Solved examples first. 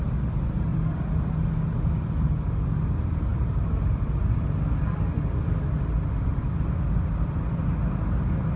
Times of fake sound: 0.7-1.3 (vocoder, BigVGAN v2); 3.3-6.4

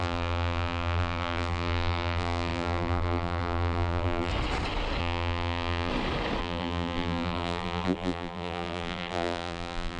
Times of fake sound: 0.0-4.3 (vocoder, BigVGAN v2); 5.0-5.9; 6.4-10.0

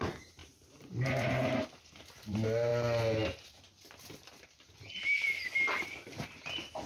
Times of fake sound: 0.4-2.0 (vocoder, BigVGAN v2)

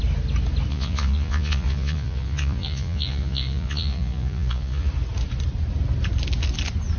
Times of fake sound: 0.7-4.9 (vocoder, Vocos)